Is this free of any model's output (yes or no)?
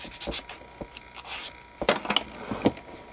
yes